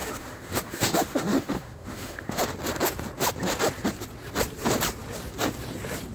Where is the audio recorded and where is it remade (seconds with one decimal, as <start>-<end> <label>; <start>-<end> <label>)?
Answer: 0.0-2.4 remade; 2.4-6.1 recorded